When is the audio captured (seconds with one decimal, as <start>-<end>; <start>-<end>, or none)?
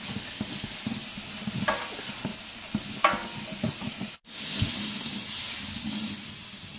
0.0-6.8